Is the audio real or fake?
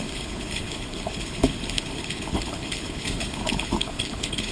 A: fake